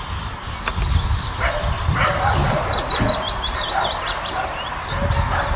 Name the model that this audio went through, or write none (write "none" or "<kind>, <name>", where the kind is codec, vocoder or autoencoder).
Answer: none